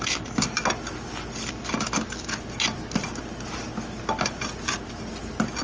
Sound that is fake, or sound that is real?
real